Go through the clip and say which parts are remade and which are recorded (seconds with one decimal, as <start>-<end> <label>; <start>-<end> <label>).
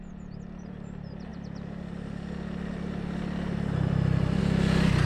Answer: 0.0-5.1 recorded